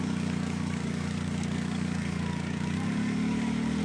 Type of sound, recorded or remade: remade